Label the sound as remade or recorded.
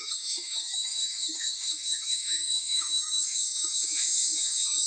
remade